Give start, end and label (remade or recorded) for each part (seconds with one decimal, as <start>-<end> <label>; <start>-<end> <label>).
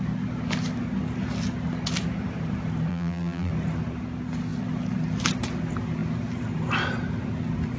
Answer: 0.0-2.9 recorded; 2.9-3.5 remade; 3.5-7.8 recorded